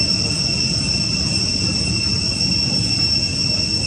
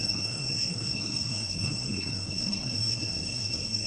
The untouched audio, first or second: first